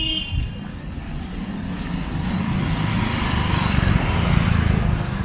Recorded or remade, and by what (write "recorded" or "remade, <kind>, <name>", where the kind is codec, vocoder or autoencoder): recorded